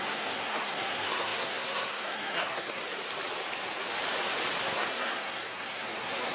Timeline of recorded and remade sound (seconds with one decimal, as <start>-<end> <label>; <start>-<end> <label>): 0.0-2.8 remade; 2.8-4.6 recorded; 4.6-6.3 remade